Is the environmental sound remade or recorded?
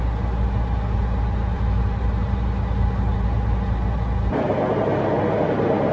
recorded